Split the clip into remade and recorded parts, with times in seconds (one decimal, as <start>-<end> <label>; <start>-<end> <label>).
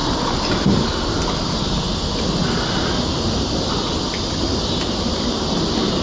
0.0-6.0 recorded